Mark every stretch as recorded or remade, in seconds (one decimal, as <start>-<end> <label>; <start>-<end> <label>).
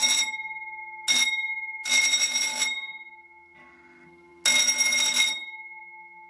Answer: 0.0-6.3 recorded